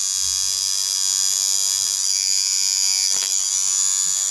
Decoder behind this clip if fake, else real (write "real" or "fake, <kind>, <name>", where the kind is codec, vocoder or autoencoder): real